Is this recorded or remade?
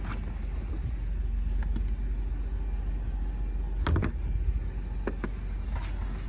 recorded